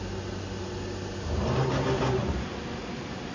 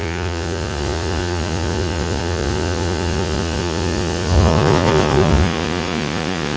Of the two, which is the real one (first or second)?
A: first